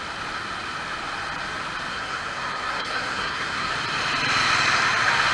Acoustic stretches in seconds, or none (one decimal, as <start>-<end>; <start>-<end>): 0.0-1.9; 3.7-5.3